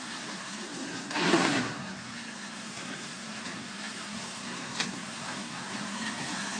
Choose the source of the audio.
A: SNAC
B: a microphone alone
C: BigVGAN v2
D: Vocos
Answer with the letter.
A